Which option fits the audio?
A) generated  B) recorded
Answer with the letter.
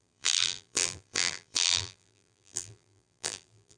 A